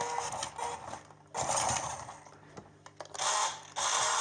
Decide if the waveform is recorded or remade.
recorded